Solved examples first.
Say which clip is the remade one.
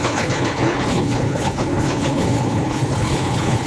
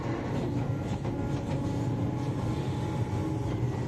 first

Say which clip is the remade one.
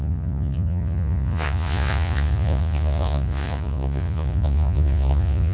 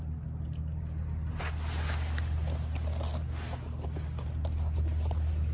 first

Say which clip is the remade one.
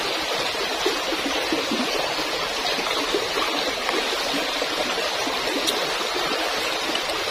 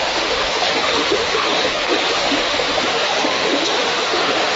second